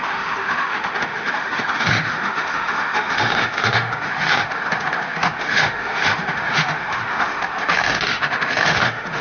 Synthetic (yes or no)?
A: yes